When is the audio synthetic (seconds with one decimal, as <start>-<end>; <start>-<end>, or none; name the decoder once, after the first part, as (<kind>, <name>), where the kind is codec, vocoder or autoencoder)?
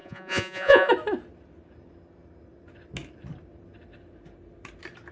0.0-0.9 (vocoder, Vocos)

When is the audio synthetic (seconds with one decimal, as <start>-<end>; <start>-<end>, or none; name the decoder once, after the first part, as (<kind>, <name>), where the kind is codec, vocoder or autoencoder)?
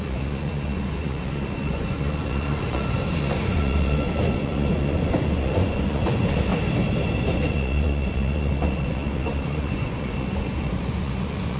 0.0-6.5 (vocoder, Vocos); 7.2-11.6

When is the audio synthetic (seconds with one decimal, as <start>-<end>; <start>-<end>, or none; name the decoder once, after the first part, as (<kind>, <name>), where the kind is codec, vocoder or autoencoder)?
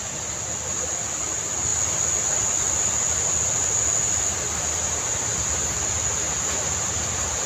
none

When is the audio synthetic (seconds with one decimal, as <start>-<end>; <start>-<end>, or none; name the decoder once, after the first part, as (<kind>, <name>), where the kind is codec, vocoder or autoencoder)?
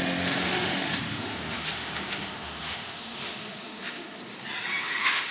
0.0-4.2 (autoencoder, DAC-VAE); 4.8-5.3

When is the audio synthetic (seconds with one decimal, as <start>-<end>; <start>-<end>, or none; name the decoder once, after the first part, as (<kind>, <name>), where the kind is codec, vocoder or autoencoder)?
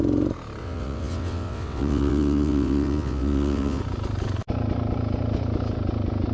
0.6-3.8 (vocoder, WaveNeXt)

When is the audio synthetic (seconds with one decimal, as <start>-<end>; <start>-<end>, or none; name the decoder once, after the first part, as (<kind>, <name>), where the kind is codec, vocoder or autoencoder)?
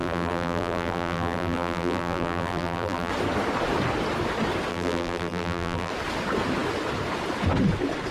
0.0-3.1 (vocoder, BigVGAN v2); 4.7-5.9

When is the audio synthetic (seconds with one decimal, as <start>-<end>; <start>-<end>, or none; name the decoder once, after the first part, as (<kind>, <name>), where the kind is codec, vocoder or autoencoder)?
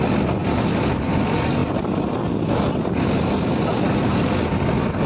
none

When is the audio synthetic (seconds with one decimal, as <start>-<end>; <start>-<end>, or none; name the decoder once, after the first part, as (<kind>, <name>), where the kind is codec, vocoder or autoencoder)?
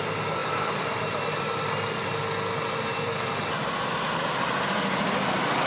none